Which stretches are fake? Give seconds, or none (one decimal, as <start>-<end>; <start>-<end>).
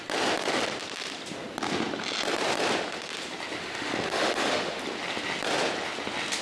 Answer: 3.6-4.8